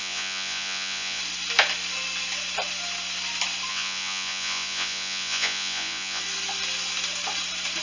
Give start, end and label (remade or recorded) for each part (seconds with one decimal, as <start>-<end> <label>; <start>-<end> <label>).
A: 0.0-1.2 remade; 1.2-3.7 recorded; 3.7-6.2 remade; 6.2-7.8 recorded